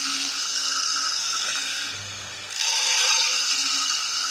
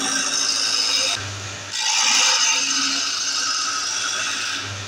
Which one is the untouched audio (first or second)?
second